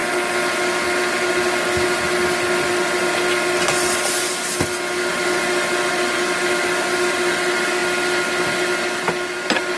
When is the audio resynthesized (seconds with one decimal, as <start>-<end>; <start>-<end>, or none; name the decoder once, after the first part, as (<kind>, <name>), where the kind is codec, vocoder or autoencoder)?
none